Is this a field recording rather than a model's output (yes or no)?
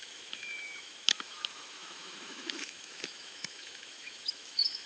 no